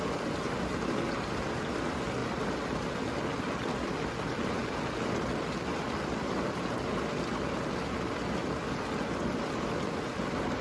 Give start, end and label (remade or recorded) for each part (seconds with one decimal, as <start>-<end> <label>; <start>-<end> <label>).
0.0-10.6 recorded